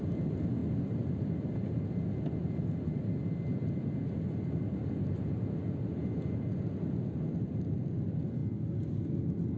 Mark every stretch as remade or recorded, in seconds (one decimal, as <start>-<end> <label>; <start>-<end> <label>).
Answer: 0.0-9.6 recorded